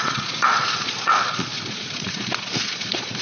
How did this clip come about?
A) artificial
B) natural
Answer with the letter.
A